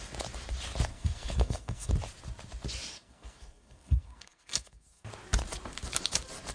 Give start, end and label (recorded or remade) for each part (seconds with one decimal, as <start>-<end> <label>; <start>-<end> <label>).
0.0-0.9 recorded; 0.9-1.9 remade; 1.9-2.9 recorded; 2.9-5.1 remade; 5.1-6.5 recorded